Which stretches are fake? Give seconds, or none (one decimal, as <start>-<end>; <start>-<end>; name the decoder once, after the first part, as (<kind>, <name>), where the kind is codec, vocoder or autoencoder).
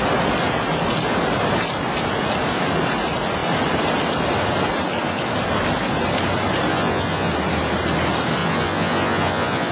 6.7-7.3 (vocoder, Vocos); 8.4-9.7